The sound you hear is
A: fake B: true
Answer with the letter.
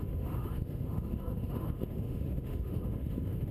A